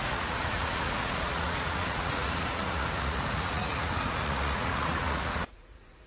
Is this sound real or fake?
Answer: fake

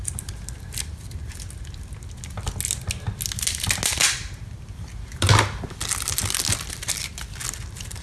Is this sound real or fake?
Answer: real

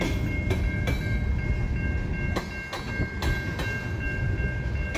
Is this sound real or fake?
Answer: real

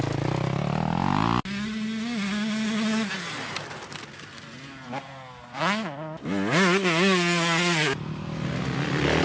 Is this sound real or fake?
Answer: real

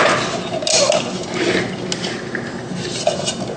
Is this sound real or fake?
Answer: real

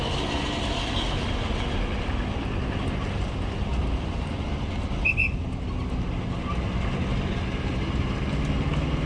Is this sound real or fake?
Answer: real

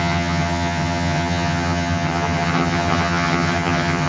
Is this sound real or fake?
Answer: fake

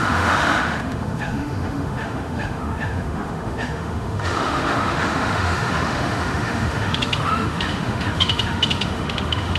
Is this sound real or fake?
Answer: fake